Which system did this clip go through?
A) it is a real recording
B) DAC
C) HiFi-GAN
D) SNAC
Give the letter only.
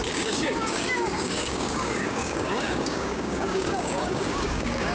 B